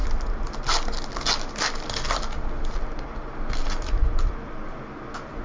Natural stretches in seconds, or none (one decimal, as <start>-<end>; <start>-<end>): 0.0-5.4